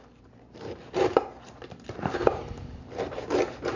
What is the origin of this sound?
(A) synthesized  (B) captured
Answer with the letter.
A